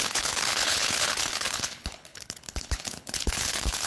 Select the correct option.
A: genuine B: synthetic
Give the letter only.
B